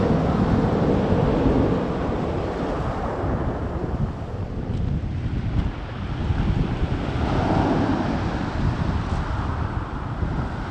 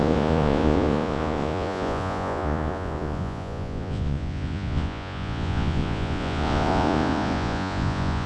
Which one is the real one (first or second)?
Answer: first